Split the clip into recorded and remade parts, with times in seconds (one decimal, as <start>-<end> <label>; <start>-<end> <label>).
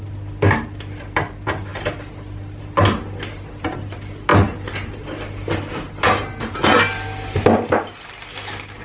0.0-8.8 recorded